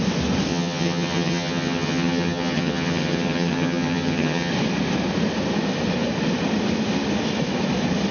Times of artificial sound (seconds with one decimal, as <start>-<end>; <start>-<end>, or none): 0.5-4.5